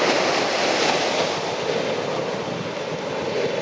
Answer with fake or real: real